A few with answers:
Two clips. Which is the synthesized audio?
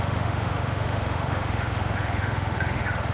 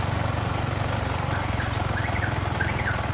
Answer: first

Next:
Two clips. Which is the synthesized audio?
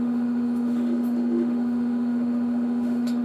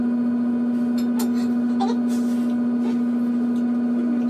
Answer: first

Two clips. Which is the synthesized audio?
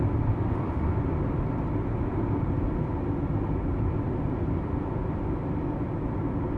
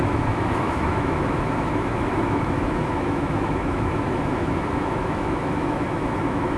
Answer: second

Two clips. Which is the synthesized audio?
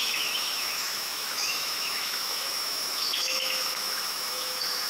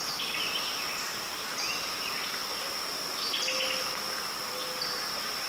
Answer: first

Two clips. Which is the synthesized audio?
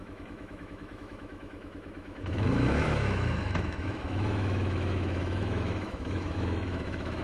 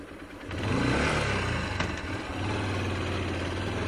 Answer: first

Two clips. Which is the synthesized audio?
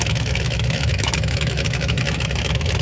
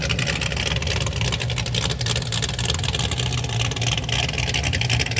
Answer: first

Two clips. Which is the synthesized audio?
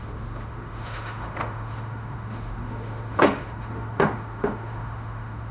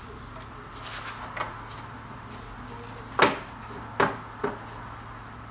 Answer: first